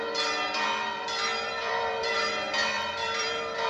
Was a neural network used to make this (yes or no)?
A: yes